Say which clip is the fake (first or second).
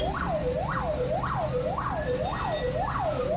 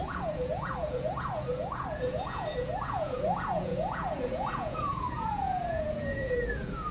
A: second